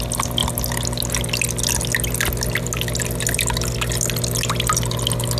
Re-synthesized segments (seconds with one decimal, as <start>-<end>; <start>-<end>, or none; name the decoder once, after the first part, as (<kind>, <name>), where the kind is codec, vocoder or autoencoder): none